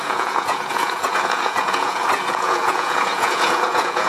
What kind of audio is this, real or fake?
fake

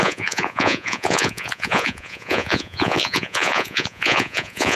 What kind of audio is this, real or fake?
fake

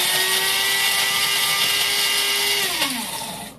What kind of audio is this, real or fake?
real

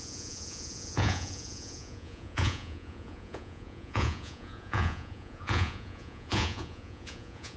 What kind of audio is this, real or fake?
fake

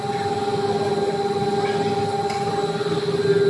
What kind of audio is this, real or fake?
real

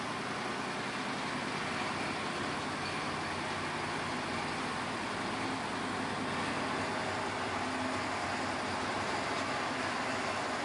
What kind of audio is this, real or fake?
real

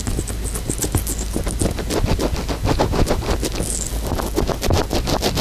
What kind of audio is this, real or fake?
real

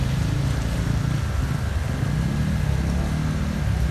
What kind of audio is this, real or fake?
real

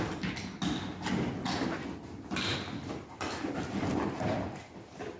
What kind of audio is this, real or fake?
real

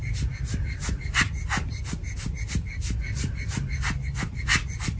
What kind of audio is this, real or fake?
real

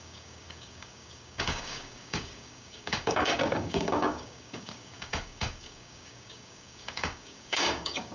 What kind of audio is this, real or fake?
fake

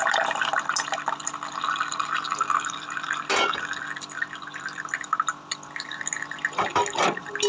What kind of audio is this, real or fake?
real